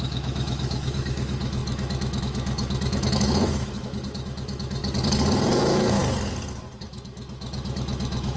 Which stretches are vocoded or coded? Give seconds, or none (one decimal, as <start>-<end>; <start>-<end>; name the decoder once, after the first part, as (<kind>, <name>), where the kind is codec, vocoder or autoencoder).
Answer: 0.0-4.8 (autoencoder, DAC-VAE); 5.6-6.0; 6.8-8.4